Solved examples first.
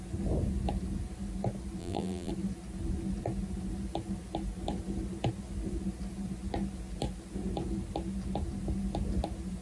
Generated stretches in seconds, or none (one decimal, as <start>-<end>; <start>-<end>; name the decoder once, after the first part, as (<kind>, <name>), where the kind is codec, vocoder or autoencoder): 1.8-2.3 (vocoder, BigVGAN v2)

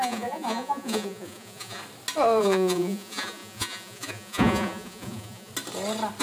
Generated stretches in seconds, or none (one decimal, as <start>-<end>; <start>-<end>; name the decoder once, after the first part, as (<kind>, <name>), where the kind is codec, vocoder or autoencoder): 0.0-1.8 (vocoder, Vocos); 2.4-5.5

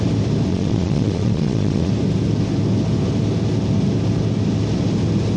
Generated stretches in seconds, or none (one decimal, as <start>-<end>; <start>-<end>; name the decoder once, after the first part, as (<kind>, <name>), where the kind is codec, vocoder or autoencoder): 0.5-1.9 (vocoder, Vocos)

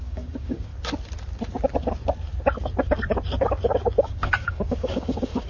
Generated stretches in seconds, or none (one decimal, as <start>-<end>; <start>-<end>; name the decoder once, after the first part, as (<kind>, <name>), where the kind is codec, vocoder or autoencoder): 0.0-0.7 (codec, DAC); 4.0-5.5

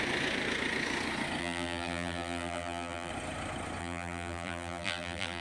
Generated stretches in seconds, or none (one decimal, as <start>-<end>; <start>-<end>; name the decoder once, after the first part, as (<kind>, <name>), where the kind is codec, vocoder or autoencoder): 1.4-3.1 (vocoder, BigVGAN v2); 3.8-5.4

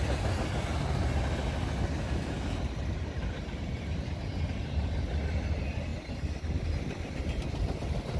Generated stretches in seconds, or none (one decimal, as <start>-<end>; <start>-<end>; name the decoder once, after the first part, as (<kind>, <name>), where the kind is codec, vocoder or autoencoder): 5.9-6.6 (vocoder, BigVGAN v2)

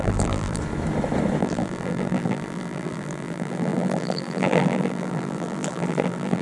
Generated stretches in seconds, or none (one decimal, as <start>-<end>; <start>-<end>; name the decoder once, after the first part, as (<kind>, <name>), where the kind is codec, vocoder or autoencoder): 0.0-0.6 (vocoder, BigVGAN v2); 1.4-6.4

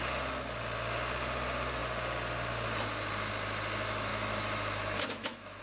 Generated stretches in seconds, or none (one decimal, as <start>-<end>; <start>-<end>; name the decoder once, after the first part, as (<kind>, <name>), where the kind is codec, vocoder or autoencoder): 4.1-5.6 (autoencoder, DAC-VAE)